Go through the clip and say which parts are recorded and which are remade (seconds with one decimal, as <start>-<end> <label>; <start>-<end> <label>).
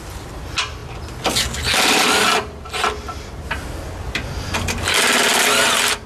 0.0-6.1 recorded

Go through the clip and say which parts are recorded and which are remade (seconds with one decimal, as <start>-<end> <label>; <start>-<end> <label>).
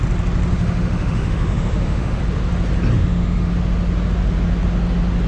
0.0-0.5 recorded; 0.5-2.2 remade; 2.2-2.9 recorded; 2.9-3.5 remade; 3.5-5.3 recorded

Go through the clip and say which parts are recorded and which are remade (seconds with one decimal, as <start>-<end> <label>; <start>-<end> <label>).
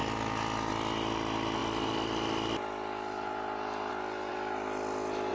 0.0-5.3 recorded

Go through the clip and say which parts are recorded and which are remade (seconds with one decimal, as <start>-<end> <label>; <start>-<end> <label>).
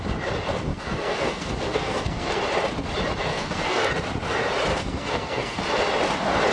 0.0-0.7 recorded; 0.7-2.4 remade; 2.4-3.3 recorded; 3.3-3.9 remade; 3.9-4.7 recorded; 4.7-5.6 remade; 5.6-6.5 recorded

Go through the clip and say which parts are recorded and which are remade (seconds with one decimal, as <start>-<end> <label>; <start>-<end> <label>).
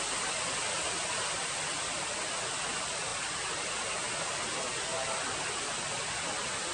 0.0-3.1 recorded; 3.1-3.7 remade; 3.7-4.9 recorded; 4.9-5.5 remade; 5.5-6.7 recorded